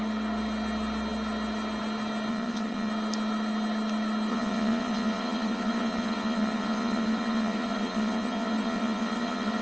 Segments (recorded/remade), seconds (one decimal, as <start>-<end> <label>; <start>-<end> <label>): 0.0-2.3 recorded; 2.3-2.9 remade; 2.9-4.3 recorded; 4.3-9.6 remade